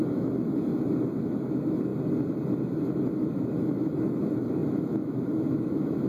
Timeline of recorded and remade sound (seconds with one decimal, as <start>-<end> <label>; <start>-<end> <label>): 0.0-0.7 remade; 0.7-1.2 recorded; 1.2-1.9 remade; 1.9-2.6 recorded; 2.6-6.1 remade

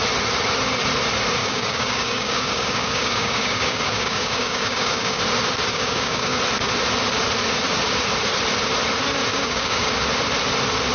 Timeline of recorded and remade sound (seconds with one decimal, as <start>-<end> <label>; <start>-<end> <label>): 0.0-1.4 recorded; 1.4-5.2 remade; 5.2-5.7 recorded; 5.7-6.4 remade; 6.4-9.3 recorded; 9.3-9.9 remade; 9.9-10.9 recorded

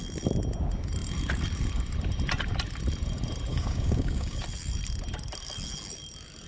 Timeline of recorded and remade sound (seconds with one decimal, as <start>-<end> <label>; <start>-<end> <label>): 0.0-3.5 recorded; 3.5-4.4 remade; 4.4-6.5 recorded